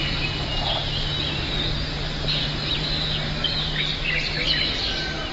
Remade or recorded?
recorded